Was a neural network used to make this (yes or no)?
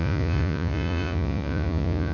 yes